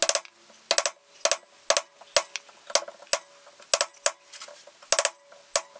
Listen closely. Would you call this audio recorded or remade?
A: recorded